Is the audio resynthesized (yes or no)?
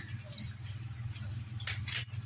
no